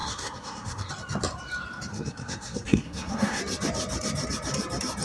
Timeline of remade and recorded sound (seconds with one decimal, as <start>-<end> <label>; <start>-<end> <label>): 0.0-0.9 remade; 0.9-1.9 recorded; 1.9-3.4 remade; 3.4-5.0 recorded